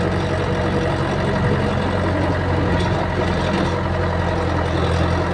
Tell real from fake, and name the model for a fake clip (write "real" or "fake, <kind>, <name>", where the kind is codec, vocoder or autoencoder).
real